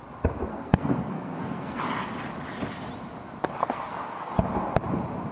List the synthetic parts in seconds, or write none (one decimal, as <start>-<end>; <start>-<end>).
0.5-1.8; 3.6-4.3